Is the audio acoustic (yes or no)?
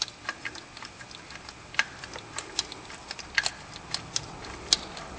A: yes